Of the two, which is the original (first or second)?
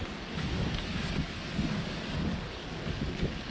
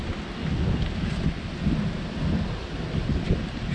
second